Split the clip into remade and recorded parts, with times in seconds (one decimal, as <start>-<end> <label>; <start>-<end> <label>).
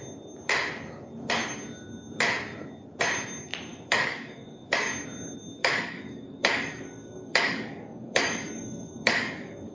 0.0-3.7 recorded; 3.7-4.9 remade; 4.9-5.6 recorded; 5.6-9.7 remade